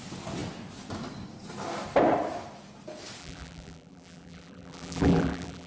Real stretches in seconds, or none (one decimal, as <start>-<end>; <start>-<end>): 0.0-3.2